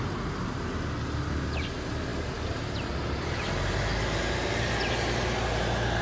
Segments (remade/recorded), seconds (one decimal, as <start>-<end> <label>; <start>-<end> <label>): 0.0-6.0 recorded